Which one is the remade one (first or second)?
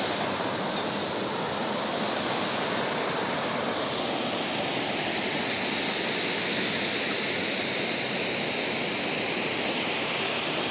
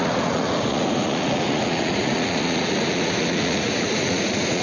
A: second